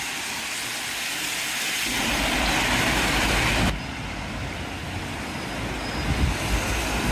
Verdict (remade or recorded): recorded